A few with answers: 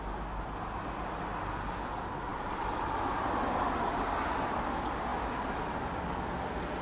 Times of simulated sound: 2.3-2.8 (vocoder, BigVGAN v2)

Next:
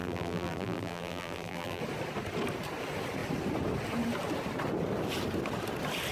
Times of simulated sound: 0.0-1.8 (vocoder, BigVGAN v2)